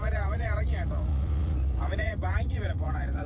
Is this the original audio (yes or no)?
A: no